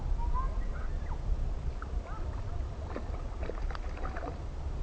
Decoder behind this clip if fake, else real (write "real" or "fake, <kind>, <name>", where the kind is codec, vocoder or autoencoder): real